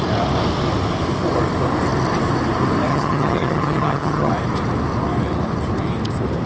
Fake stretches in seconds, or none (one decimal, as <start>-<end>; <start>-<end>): 2.9-4.3

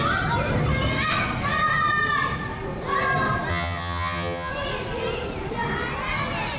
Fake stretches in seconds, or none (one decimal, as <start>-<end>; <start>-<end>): 3.5-4.5

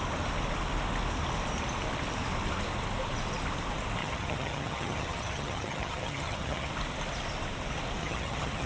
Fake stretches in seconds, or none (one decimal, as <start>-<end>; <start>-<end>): 4.0-6.7; 8.0-8.7

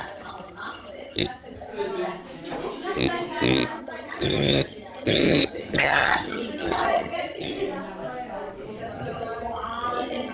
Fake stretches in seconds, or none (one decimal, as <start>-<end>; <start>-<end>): 0.0-1.7; 3.8-7.5; 8.8-10.3

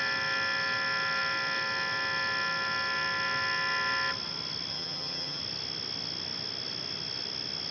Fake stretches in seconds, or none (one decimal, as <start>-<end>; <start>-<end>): 4.7-5.4

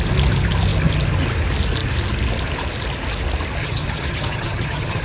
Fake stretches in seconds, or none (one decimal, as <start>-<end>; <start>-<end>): 3.6-5.0

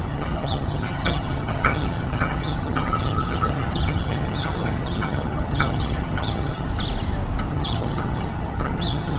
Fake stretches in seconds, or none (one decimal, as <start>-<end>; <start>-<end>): 0.0-6.7; 7.5-9.2